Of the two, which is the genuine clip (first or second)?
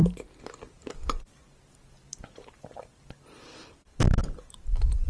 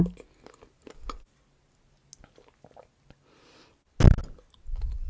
second